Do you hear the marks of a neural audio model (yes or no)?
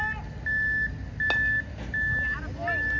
no